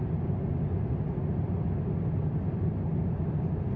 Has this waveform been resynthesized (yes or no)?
no